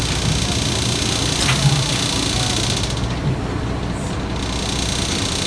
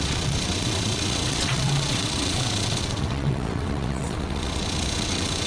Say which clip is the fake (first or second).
second